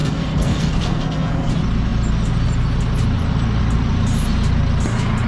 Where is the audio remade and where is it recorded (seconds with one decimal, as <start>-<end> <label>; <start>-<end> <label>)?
0.0-1.5 remade; 1.5-5.3 recorded